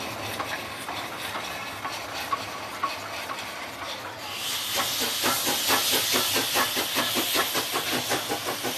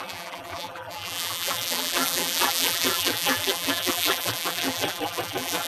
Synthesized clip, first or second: second